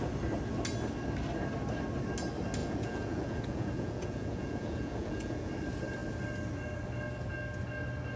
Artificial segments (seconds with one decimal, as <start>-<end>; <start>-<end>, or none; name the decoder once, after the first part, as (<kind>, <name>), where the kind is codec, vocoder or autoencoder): 2.6-5.5 (vocoder, Vocos)

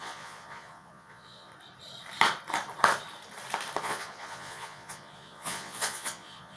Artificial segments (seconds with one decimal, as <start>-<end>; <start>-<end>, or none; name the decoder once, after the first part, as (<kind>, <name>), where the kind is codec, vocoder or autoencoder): 0.0-1.5 (vocoder, Vocos); 3.8-6.6